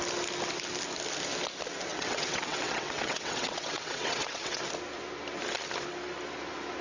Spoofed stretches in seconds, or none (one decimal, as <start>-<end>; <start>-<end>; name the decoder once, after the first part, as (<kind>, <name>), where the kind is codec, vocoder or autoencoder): 1.9-4.6 (vocoder, WaveNeXt)